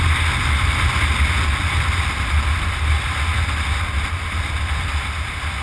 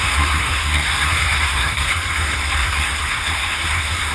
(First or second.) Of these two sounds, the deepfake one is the second